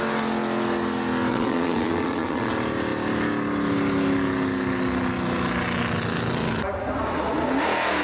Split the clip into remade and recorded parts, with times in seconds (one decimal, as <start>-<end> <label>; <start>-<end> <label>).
0.0-1.3 recorded; 1.3-2.5 remade; 2.5-8.0 recorded